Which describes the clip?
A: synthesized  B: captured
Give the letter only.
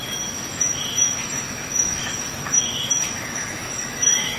A